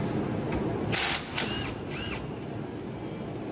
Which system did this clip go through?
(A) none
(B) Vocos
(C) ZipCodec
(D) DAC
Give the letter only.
A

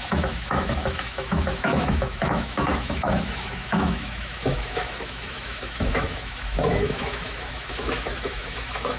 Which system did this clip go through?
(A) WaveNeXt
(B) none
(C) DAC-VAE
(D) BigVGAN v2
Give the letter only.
C